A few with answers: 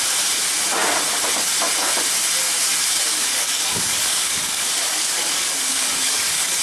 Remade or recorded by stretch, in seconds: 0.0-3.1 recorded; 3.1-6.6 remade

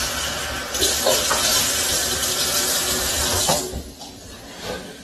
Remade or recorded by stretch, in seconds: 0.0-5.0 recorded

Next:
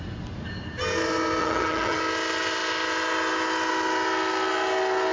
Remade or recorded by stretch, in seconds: 0.0-1.4 recorded; 1.4-2.0 remade; 2.0-5.1 recorded